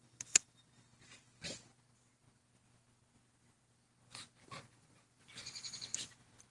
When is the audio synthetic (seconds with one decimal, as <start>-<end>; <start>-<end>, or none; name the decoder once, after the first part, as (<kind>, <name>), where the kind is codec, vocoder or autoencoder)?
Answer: 4.4-6.1 (vocoder, Vocos)